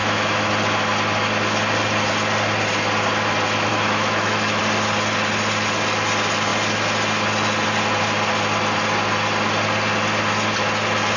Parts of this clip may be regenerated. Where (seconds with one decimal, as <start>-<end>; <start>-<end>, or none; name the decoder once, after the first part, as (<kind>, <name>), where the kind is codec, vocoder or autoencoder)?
0.0-0.5 (autoencoder, DAC-VAE); 3.7-4.6